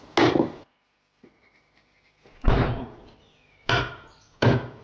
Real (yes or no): yes